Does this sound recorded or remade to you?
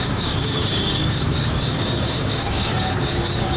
remade